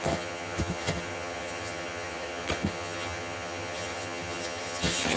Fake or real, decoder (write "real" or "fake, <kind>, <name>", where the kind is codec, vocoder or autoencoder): fake, vocoder, HiFi-GAN